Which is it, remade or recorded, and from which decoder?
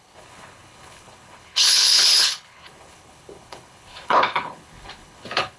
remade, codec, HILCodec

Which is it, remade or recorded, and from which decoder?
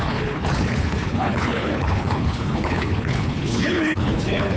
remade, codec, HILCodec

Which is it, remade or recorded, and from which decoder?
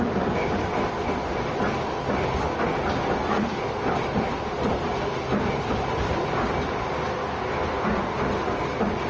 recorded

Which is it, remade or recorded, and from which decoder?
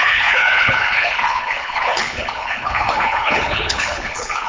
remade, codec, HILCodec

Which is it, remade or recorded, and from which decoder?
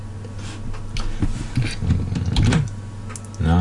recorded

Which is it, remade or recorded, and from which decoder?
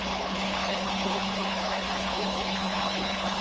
remade, codec, HILCodec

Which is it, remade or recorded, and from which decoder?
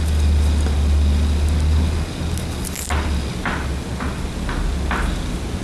recorded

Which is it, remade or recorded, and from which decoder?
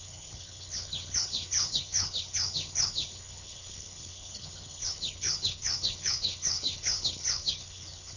remade, codec, HILCodec